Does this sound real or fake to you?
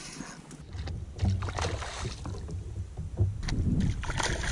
real